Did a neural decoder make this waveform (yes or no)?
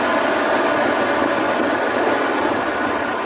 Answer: no